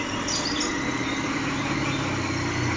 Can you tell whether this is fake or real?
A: real